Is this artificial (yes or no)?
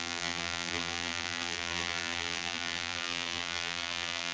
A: yes